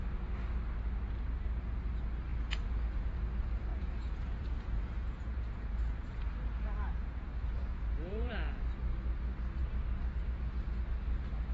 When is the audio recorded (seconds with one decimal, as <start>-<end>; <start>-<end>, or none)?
0.0-2.3; 3.1-3.7; 8.3-11.5